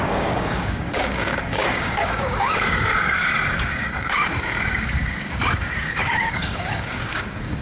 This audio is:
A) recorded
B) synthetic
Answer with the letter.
B